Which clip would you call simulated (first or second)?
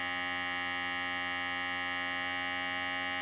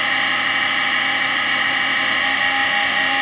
second